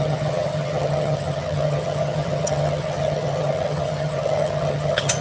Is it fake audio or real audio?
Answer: fake